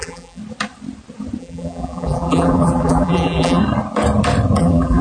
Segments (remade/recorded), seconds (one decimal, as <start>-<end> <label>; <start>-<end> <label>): 0.0-0.4 remade; 0.4-1.4 recorded; 1.4-3.6 remade; 3.6-4.6 recorded; 4.6-5.0 remade